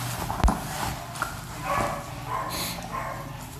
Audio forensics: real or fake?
fake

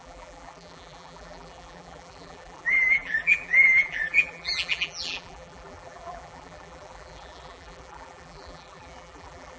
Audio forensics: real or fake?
fake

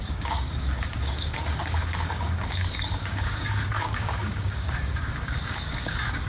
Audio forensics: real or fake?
fake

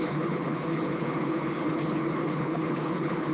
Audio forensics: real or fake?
fake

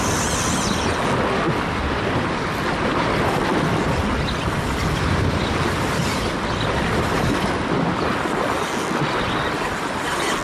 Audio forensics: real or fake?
real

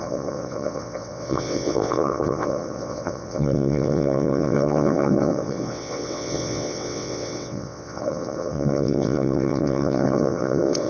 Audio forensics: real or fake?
fake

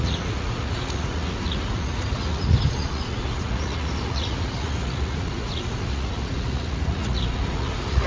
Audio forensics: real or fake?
fake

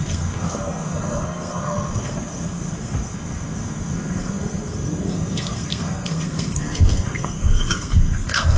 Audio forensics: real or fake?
fake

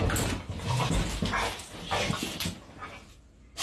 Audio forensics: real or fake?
real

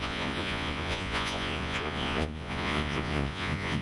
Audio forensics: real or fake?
fake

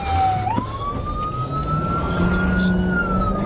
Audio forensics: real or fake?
real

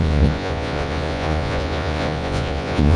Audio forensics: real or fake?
fake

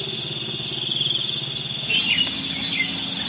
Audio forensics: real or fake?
real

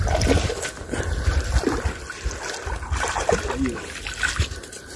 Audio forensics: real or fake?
real